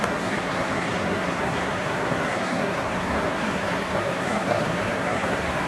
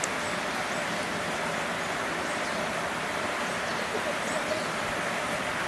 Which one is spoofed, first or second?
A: first